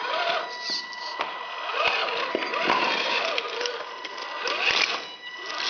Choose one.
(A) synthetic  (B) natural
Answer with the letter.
B